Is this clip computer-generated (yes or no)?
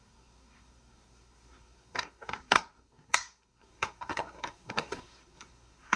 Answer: yes